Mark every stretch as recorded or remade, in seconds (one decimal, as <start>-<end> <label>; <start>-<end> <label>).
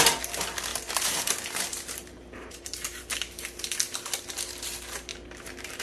0.0-0.7 recorded; 0.7-3.0 remade; 3.0-5.1 recorded; 5.1-5.8 remade